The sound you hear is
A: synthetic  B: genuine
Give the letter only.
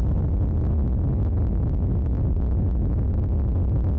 B